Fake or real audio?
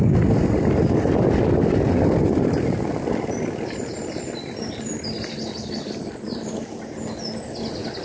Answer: real